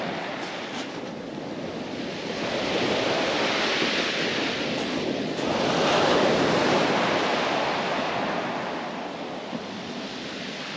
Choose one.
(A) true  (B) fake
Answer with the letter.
A